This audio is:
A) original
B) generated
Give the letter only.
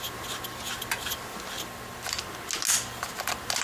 A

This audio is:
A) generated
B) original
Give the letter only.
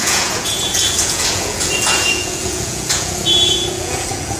A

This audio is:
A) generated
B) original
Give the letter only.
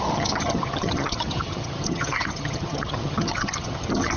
A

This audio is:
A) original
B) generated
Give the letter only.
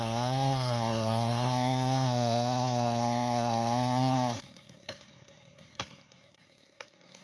B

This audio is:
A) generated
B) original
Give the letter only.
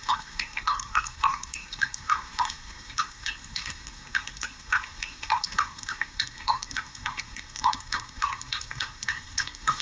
A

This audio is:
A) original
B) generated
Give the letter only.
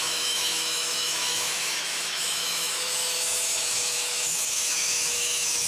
B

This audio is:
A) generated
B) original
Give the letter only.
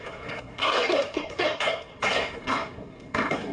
A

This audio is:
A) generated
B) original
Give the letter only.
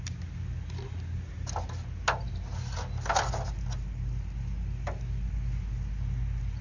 B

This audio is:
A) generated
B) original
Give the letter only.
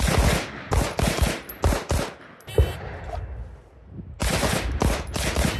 B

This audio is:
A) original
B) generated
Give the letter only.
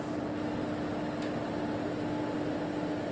A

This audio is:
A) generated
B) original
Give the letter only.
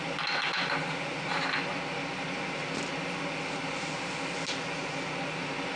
B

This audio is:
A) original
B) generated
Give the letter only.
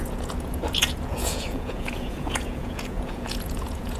B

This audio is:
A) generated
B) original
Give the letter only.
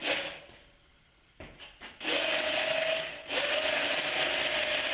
B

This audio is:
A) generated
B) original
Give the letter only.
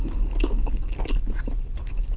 B